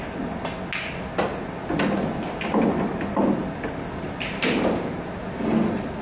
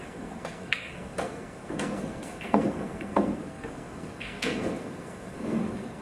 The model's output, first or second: second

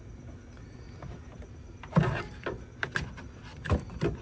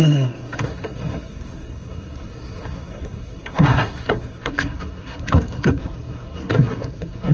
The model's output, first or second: second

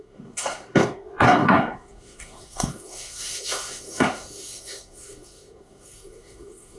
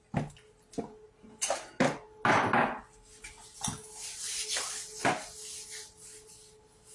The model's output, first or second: first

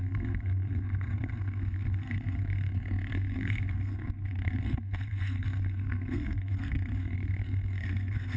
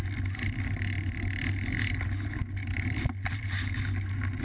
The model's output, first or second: first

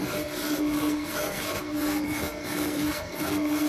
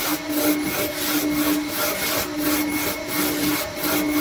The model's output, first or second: first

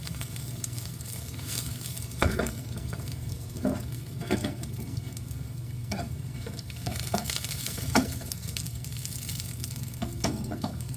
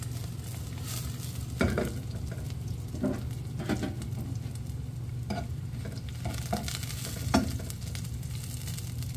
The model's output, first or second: first